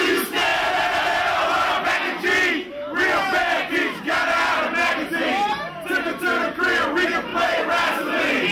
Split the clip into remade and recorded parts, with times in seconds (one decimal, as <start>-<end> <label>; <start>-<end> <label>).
0.0-7.3 recorded; 7.3-8.5 remade

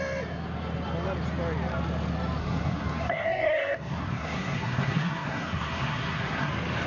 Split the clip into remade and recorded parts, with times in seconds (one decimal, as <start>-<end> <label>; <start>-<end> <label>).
0.0-2.4 recorded; 2.4-6.5 remade; 6.5-6.9 recorded

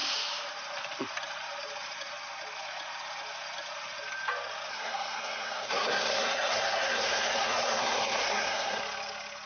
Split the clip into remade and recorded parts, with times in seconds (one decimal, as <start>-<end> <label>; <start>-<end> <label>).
0.0-4.7 recorded; 4.7-8.8 remade; 8.8-9.5 recorded

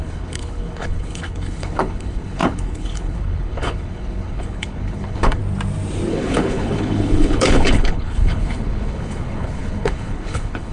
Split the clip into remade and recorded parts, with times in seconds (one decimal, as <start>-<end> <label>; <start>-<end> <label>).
0.0-5.4 remade; 5.4-6.1 recorded; 6.1-10.7 remade

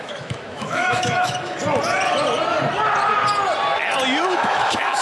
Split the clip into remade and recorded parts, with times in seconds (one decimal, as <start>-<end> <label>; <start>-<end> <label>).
0.0-1.6 remade; 1.6-4.2 recorded; 4.2-5.0 remade

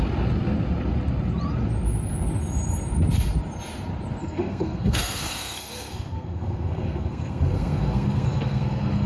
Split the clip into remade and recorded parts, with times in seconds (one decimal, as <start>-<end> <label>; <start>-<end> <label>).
0.0-4.2 recorded; 4.2-9.1 remade

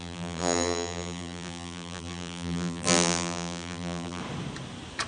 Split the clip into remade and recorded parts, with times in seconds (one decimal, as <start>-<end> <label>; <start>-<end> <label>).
0.0-4.2 remade; 4.2-5.1 recorded